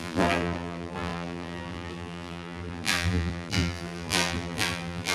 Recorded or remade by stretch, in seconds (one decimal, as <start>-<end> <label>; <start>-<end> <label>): 0.0-5.1 remade